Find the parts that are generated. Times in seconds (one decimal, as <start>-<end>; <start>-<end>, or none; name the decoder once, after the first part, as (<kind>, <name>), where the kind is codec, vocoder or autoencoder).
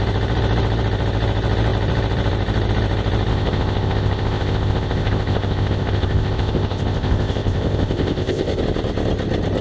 3.3-8.6 (codec, ZipCodec)